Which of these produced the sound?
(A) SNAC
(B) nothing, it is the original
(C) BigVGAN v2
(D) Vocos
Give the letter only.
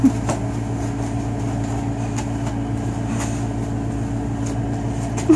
B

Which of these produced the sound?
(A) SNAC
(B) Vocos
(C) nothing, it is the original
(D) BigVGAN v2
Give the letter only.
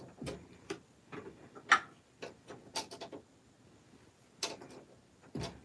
C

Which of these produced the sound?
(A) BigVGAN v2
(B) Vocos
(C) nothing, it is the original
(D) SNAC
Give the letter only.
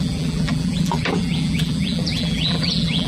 A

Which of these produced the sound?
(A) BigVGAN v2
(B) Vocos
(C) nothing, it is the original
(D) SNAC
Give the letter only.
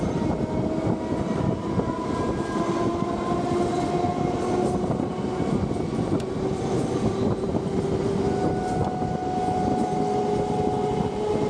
C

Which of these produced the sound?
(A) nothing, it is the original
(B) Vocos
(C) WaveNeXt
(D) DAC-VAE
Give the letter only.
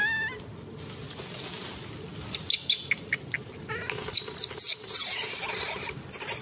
A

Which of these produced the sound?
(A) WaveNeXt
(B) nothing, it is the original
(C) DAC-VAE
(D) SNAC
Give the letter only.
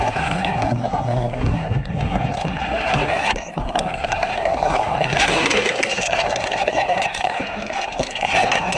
D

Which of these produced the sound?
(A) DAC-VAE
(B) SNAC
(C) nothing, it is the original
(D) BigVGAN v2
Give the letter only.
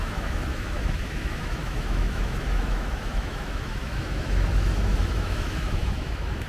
A